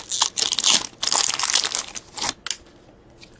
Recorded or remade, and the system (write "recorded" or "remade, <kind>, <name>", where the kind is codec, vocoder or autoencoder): recorded